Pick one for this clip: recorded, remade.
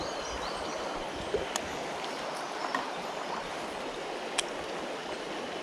recorded